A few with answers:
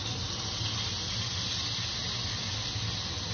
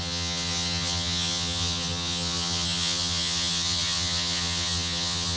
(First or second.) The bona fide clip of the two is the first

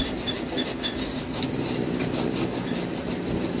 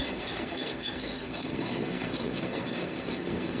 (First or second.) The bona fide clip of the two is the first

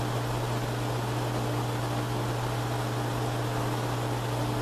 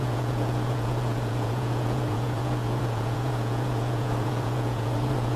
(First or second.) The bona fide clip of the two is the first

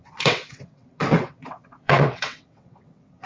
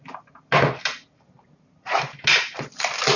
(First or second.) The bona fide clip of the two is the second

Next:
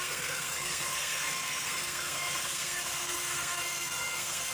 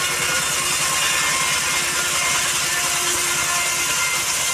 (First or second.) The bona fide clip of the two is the second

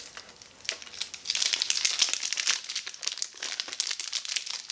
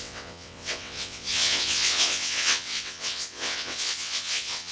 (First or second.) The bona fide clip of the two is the first